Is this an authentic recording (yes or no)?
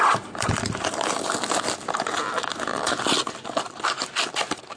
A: yes